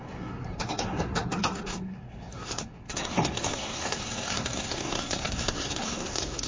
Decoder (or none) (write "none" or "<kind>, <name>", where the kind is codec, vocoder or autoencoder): codec, SNAC